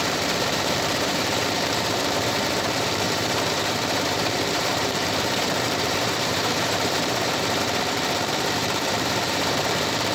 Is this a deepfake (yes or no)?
yes